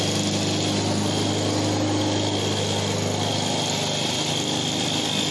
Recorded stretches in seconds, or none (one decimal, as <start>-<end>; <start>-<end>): 0.0-5.3